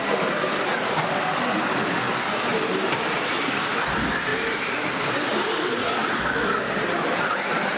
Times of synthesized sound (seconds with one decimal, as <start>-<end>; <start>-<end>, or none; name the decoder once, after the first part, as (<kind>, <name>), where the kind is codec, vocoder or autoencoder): 0.0-4.3 (vocoder, BigVGAN v2); 4.9-7.8